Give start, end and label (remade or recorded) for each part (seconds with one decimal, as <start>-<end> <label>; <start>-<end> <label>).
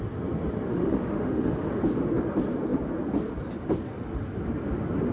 0.0-0.7 recorded; 0.7-1.7 remade; 1.7-5.1 recorded